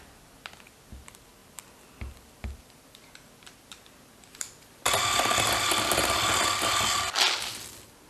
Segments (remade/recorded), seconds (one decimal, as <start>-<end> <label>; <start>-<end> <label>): 0.0-8.1 recorded